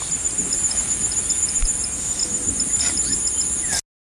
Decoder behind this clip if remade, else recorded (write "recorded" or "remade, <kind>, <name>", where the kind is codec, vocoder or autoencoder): recorded